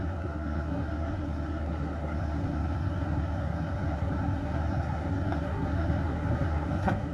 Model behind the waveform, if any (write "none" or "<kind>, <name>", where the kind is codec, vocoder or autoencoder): codec, SNAC